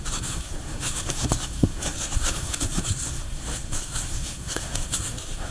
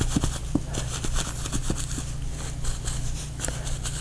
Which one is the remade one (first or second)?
first